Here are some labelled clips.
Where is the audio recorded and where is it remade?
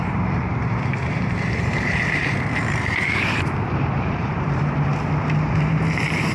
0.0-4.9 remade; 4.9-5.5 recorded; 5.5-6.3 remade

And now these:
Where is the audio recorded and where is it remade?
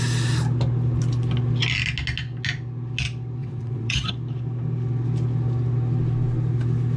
0.0-3.4 recorded; 3.4-4.1 remade; 4.1-7.0 recorded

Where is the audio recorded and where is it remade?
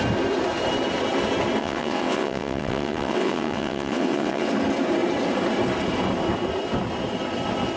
0.0-1.6 recorded; 1.6-4.5 remade; 4.5-7.8 recorded